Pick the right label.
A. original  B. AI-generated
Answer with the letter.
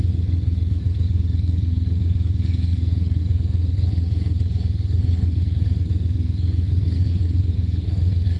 B